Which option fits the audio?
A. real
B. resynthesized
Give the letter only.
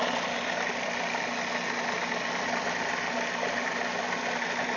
A